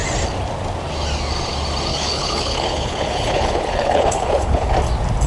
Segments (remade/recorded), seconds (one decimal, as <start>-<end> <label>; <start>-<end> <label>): 0.0-1.9 recorded; 1.9-4.7 remade; 4.7-5.3 recorded